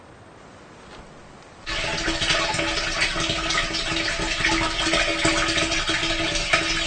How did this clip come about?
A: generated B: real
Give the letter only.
B